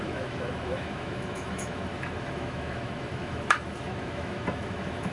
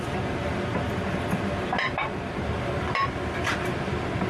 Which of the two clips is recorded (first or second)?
second